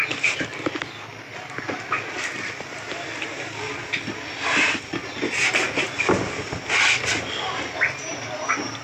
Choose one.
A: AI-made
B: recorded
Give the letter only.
B